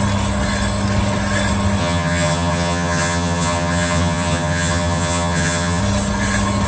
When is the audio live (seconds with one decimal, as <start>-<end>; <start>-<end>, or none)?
0.0-1.8; 5.8-6.7